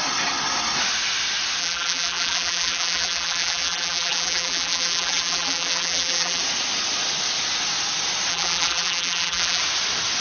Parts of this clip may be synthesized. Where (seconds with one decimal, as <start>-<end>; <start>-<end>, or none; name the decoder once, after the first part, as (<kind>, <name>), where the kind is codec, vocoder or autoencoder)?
1.6-6.4 (vocoder, BigVGAN v2); 8.3-9.6